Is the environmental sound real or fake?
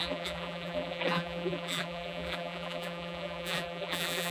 fake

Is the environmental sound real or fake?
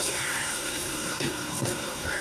fake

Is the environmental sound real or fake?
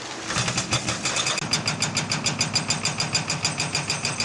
real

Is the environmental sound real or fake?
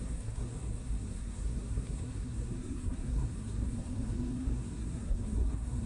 fake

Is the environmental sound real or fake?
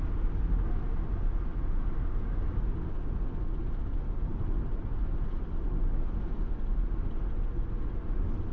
real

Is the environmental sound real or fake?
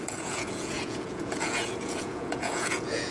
fake